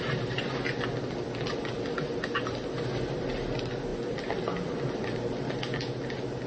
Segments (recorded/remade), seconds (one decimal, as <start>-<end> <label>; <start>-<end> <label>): 0.0-6.5 recorded